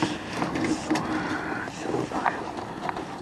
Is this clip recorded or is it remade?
recorded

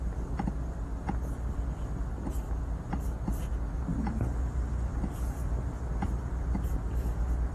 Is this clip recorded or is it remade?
recorded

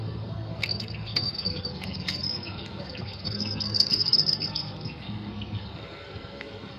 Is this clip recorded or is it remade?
remade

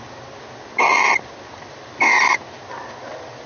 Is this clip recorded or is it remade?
recorded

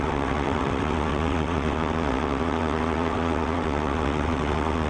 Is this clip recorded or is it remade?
remade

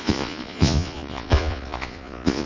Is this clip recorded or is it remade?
remade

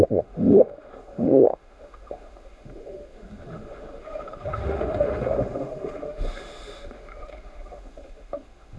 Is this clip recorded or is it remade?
remade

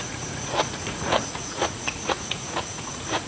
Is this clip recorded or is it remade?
remade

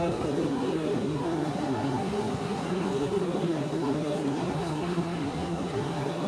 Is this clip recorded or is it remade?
remade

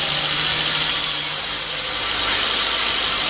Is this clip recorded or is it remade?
recorded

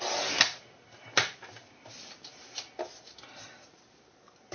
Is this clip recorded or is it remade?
recorded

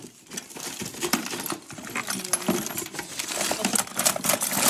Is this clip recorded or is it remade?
recorded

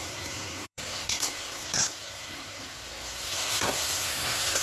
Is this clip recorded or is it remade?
remade